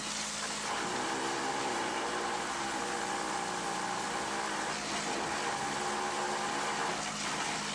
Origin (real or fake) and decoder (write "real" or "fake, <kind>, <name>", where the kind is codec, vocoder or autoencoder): real